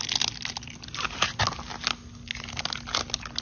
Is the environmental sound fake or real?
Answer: real